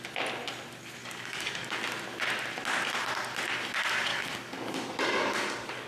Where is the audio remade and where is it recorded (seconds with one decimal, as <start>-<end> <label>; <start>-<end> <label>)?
0.0-1.0 recorded; 1.0-1.8 remade; 1.8-4.1 recorded; 4.1-5.9 remade